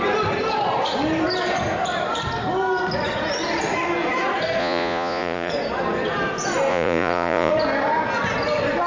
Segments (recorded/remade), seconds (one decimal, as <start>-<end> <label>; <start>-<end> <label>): 0.0-4.6 recorded; 4.6-5.5 remade; 5.5-6.7 recorded; 6.7-7.5 remade; 7.5-8.9 recorded